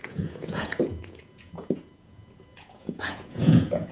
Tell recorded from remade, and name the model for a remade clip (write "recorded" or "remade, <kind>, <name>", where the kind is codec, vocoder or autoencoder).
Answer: remade, vocoder, Vocos